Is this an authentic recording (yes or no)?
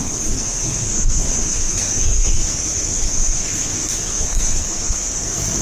no